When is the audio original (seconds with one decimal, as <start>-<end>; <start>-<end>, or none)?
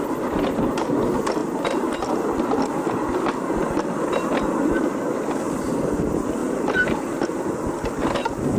0.0-6.4; 7.0-8.6